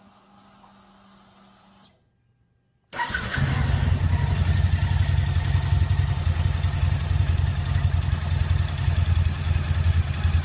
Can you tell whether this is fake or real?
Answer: real